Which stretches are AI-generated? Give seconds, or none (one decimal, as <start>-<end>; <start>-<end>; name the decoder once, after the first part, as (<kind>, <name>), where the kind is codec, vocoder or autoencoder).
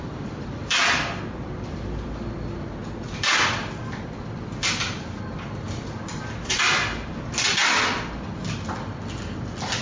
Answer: none